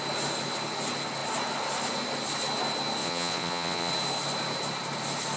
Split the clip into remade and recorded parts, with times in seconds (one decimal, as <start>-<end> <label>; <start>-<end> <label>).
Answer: 0.0-3.0 recorded; 3.0-3.9 remade; 3.9-5.4 recorded